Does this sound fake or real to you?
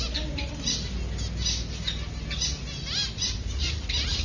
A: real